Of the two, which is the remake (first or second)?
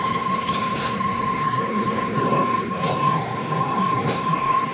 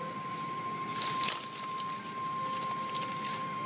first